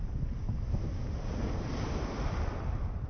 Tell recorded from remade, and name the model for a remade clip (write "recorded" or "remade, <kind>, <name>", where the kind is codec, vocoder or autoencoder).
recorded